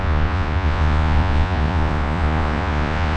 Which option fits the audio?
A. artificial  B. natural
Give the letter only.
A